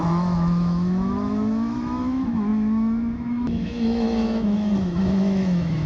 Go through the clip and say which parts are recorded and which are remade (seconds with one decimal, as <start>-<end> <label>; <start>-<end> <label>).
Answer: 0.0-5.9 remade